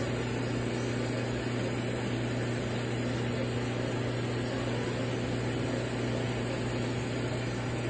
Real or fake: real